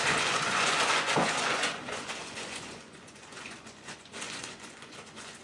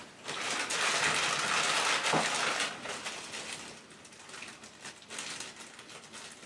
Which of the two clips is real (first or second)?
second